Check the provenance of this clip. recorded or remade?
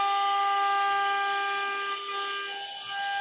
recorded